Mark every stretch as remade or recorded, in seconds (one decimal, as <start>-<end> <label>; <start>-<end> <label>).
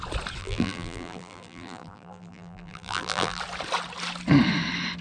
0.0-0.4 recorded; 0.4-3.4 remade; 3.4-5.0 recorded